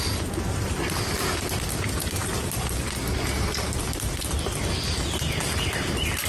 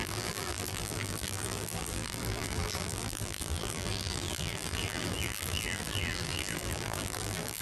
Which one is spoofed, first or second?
second